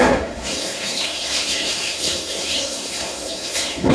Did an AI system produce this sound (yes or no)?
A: yes